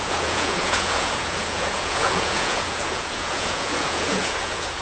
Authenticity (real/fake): fake